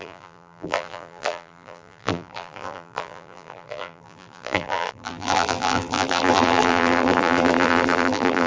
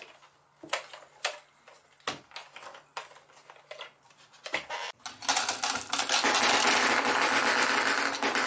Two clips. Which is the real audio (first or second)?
second